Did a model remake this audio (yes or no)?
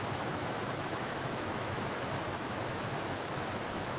yes